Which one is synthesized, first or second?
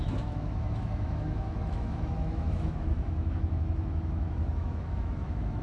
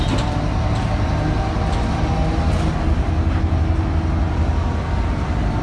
first